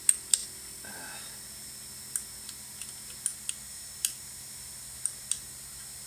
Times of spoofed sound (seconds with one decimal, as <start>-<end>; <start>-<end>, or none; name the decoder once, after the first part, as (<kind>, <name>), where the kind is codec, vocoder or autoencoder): none